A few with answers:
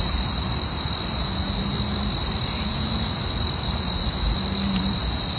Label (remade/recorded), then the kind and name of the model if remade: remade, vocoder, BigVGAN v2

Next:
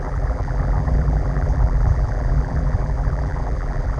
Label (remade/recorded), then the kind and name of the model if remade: remade, vocoder, BigVGAN v2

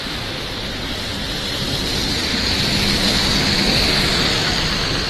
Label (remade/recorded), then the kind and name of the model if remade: recorded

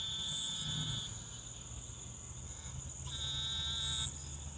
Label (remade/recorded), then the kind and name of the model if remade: recorded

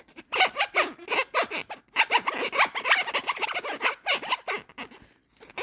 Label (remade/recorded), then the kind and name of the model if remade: remade, vocoder, BigVGAN v2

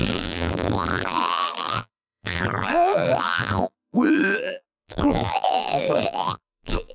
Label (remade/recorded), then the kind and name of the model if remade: remade, vocoder, BigVGAN v2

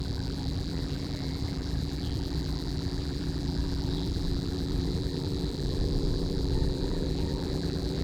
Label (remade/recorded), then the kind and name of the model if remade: remade, vocoder, BigVGAN v2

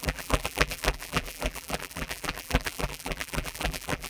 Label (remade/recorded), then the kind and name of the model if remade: remade, vocoder, BigVGAN v2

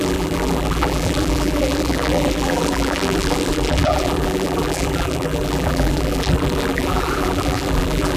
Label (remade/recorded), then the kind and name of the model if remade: remade, vocoder, BigVGAN v2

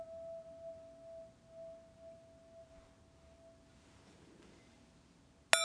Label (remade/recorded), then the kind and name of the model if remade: recorded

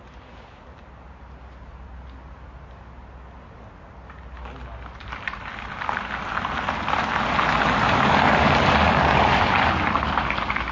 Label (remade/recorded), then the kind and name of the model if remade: recorded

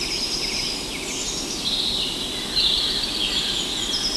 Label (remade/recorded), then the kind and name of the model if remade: recorded